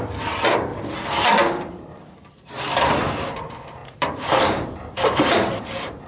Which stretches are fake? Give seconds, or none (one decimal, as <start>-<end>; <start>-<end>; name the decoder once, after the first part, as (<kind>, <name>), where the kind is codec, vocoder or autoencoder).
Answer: 0.0-0.7 (vocoder, BigVGAN v2); 1.4-6.1